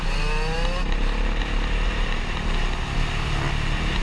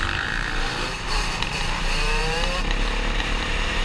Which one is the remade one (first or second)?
second